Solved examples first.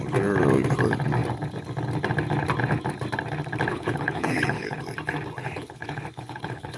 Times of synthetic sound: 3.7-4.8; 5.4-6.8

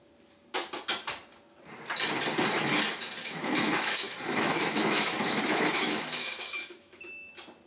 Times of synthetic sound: 3.2-7.3

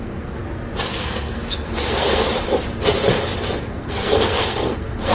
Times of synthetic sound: 0.0-0.4; 0.9-2.3; 3.6-5.1

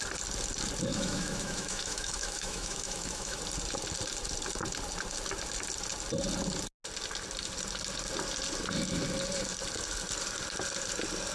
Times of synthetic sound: 0.9-3.4

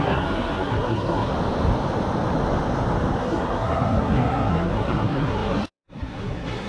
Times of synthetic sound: 0.0-1.3; 3.2-6.7

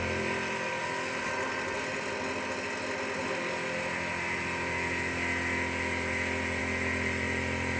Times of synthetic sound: none